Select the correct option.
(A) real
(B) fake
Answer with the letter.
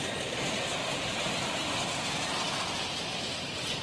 A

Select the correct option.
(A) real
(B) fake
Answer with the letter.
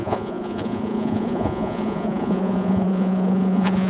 B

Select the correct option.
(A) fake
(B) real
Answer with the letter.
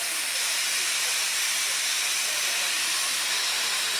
B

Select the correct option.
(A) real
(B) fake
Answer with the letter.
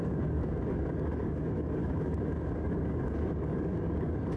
B